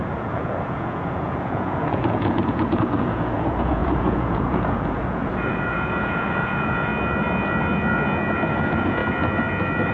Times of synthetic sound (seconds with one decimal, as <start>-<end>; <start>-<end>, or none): 0.0-6.9; 8.5-9.0